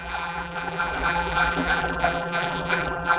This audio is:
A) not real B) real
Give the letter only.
A